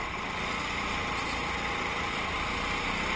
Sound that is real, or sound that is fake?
real